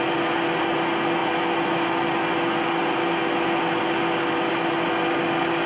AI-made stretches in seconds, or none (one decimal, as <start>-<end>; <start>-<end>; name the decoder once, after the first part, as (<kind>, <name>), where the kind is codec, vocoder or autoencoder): none